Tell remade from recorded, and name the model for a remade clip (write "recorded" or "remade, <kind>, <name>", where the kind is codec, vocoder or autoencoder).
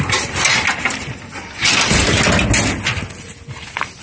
recorded